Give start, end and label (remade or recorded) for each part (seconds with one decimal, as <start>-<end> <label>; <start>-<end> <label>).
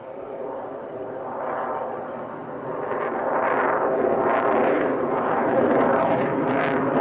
0.0-1.2 remade; 1.2-4.6 recorded; 4.6-6.5 remade; 6.5-7.0 recorded